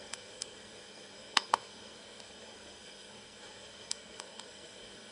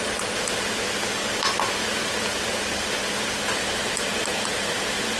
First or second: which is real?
second